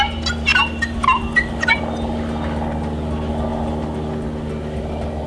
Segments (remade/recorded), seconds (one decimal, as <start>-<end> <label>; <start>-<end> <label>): 0.0-5.3 recorded